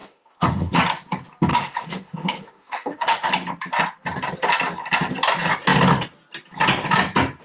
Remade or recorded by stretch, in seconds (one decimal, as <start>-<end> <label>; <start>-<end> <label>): 0.0-0.8 remade; 0.8-1.5 recorded; 1.5-3.3 remade; 3.3-7.4 recorded